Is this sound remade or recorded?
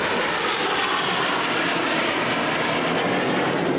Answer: recorded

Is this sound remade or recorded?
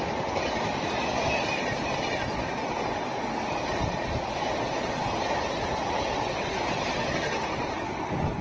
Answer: recorded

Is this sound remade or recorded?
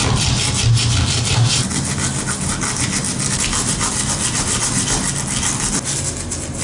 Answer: recorded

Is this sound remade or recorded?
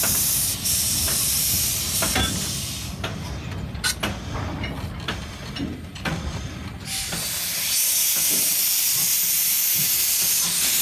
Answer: recorded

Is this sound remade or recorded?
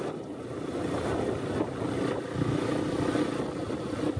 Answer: recorded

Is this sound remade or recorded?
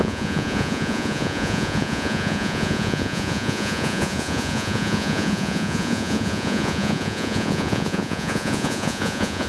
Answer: remade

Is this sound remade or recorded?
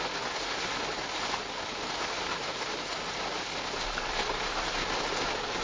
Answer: recorded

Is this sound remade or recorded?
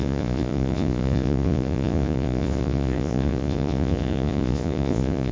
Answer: remade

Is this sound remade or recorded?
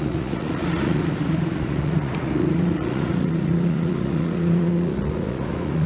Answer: remade